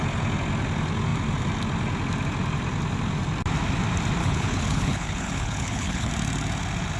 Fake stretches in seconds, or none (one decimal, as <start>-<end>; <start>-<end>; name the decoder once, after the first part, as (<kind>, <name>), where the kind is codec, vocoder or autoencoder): 4.2-6.1 (codec, HILCodec)